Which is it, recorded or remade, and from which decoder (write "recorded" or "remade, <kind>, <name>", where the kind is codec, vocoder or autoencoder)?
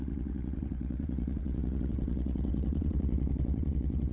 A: remade, vocoder, WaveNeXt